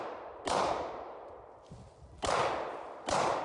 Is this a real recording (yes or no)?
yes